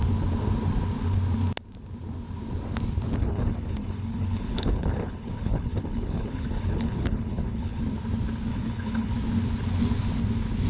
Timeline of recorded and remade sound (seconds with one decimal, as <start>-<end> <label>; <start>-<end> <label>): 0.0-3.2 recorded; 3.2-7.8 remade; 7.8-8.5 recorded; 8.5-9.1 remade; 9.1-10.7 recorded